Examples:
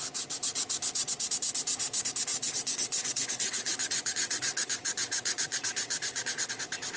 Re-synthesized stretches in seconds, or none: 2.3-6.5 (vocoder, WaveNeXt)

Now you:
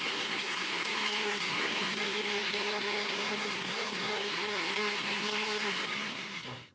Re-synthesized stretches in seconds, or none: 0.0-6.7 (codec, SNAC)